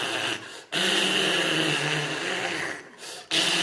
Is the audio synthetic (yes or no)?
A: no